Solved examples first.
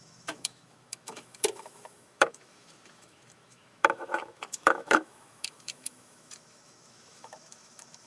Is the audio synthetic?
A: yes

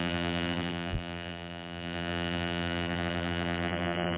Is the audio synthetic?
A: yes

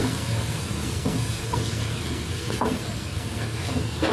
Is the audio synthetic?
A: yes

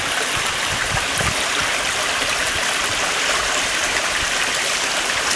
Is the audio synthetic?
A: yes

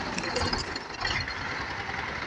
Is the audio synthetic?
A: no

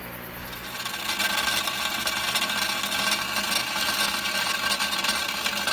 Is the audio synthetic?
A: no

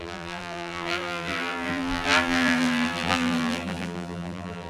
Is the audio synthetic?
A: yes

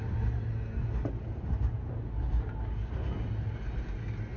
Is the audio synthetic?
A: no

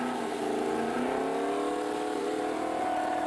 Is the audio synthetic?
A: no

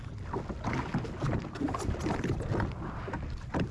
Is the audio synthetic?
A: no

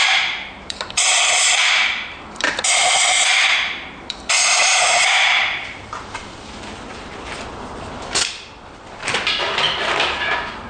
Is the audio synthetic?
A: yes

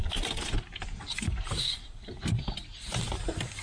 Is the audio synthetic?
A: no